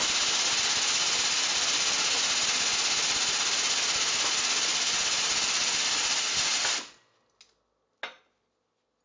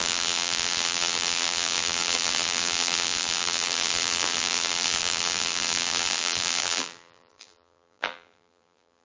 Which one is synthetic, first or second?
second